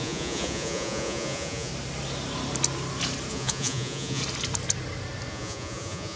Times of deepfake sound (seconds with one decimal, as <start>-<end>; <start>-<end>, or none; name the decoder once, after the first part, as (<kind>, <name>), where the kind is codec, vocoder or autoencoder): 0.0-1.7 (vocoder, Vocos); 3.3-4.2; 5.3-6.2